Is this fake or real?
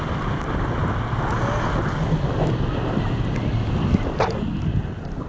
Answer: real